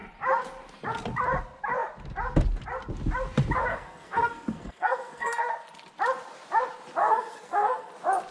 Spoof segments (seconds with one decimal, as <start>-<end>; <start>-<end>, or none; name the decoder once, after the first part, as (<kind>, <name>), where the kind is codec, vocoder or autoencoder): 3.7-5.4 (codec, SNAC); 7.0-7.9